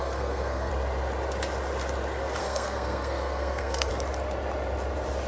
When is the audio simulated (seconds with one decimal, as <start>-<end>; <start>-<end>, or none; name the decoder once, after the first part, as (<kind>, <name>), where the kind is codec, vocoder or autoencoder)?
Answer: 0.0-0.7 (codec, SNAC); 2.4-3.9